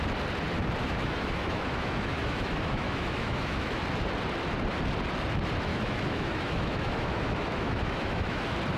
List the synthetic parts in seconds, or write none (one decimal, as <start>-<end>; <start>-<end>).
0.8-3.8; 5.7-8.4

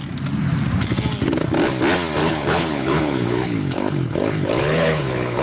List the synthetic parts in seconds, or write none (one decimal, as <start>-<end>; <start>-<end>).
2.2-5.4

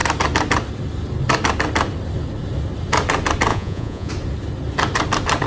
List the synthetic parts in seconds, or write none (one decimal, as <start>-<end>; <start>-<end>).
3.5-4.1

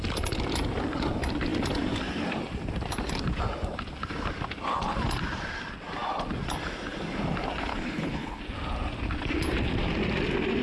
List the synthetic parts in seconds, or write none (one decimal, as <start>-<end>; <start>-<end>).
7.7-8.4